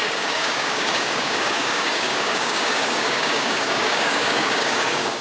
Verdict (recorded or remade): remade